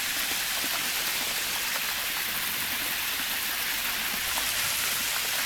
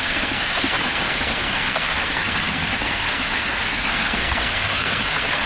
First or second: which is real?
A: first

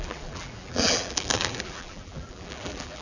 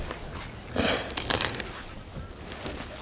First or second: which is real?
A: second